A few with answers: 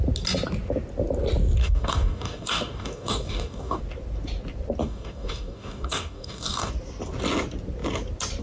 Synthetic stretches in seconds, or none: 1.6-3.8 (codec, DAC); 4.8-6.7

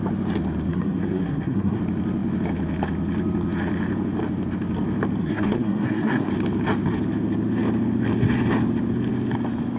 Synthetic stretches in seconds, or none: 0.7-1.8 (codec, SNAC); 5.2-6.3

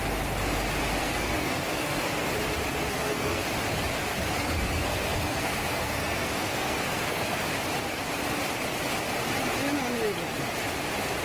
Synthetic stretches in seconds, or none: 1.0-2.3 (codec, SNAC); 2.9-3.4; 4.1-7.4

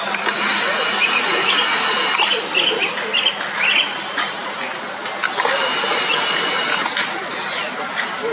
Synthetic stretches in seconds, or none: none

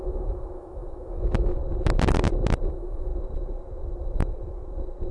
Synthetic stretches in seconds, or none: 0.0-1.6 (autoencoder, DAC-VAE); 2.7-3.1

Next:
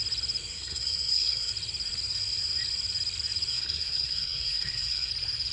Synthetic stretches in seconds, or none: 0.5-1.5 (codec, SNAC); 3.5-5.1